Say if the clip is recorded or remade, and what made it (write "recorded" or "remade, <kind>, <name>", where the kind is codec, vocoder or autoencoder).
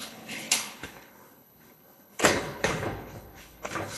remade, codec, HILCodec